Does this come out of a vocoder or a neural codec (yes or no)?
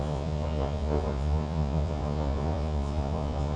yes